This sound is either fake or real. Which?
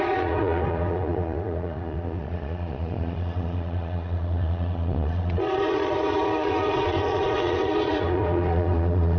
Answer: fake